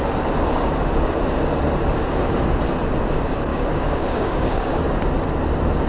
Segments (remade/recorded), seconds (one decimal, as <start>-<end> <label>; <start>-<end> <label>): 0.0-3.5 recorded; 3.5-4.8 remade; 4.8-5.9 recorded

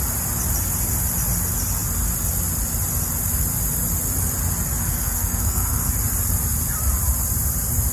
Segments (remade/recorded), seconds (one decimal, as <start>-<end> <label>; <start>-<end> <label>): 0.0-4.8 recorded; 4.8-5.9 remade; 5.9-7.9 recorded